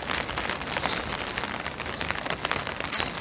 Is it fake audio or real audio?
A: real